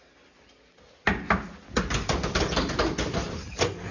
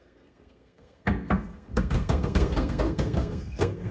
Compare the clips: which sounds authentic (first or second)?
first